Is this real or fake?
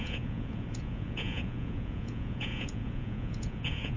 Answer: fake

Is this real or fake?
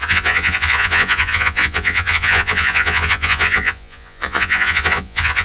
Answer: fake